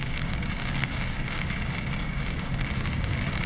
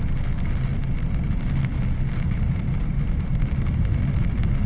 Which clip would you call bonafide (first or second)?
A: second